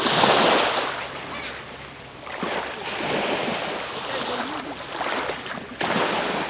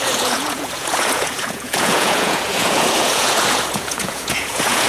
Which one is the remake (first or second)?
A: second